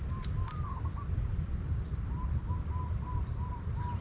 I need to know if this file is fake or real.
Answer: fake